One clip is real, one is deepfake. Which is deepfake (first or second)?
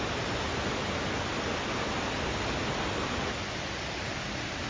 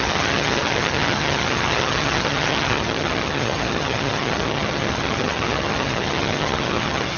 second